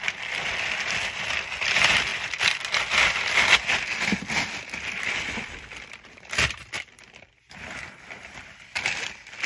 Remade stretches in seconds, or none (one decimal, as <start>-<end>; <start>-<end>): 6.6-7.3